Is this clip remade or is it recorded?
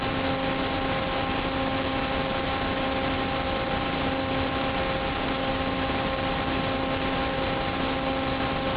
recorded